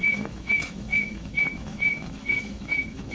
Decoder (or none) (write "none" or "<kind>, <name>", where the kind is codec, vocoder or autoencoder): autoencoder, DAC-VAE